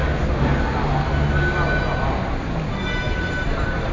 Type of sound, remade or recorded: recorded